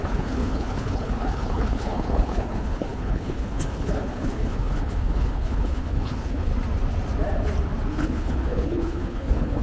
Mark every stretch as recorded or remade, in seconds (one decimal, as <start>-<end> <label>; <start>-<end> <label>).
0.0-6.5 remade; 6.5-7.9 recorded; 7.9-9.6 remade